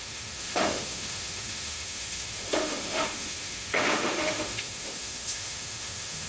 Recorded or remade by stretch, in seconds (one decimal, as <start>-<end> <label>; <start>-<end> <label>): 0.0-6.3 remade